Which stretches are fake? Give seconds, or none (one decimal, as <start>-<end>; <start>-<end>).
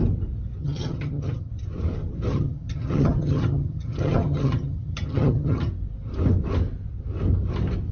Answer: 0.6-1.5; 2.3-5.7